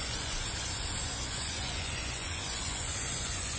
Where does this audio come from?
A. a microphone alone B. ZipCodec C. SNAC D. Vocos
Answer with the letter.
D